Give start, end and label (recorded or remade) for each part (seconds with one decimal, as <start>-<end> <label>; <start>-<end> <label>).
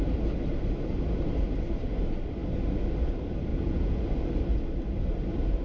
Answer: 0.0-3.5 recorded; 3.5-4.1 remade; 4.1-5.6 recorded